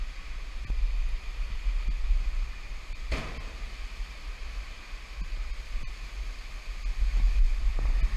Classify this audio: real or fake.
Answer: real